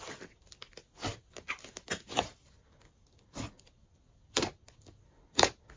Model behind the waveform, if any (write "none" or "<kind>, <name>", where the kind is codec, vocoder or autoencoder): none